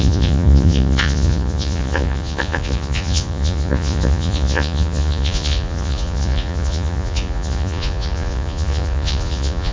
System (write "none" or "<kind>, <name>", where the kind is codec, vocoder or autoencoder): vocoder, Vocos